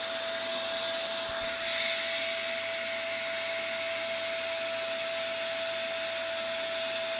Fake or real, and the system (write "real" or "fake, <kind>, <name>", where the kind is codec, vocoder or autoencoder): real